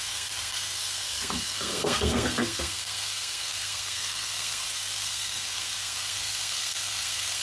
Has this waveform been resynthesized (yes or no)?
yes